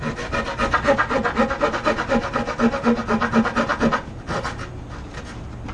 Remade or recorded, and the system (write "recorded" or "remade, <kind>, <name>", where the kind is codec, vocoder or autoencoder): recorded